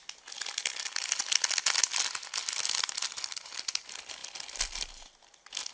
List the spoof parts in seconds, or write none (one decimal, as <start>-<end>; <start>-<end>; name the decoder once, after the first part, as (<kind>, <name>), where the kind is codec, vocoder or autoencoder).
2.4-3.7 (vocoder, BigVGAN v2); 4.2-4.9